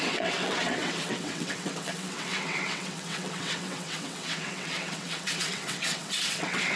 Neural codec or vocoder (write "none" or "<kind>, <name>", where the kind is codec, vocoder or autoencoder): vocoder, WaveNeXt